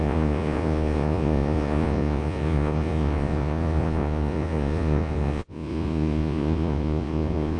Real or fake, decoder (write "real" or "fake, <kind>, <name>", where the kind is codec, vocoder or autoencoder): fake, vocoder, Vocos